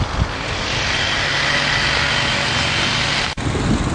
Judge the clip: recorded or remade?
recorded